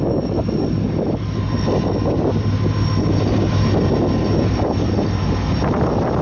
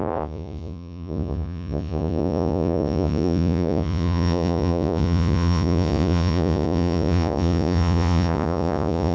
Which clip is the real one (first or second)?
first